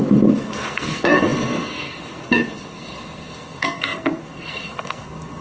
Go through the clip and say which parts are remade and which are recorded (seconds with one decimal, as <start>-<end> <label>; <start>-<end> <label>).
0.0-5.4 remade